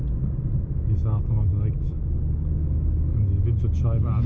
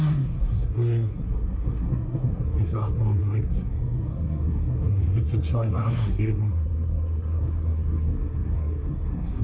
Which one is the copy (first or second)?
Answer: second